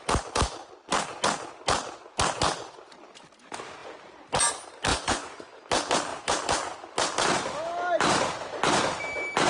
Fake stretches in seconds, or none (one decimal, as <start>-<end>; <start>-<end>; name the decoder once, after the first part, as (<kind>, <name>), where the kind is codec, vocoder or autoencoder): 4.9-5.5 (vocoder, Vocos)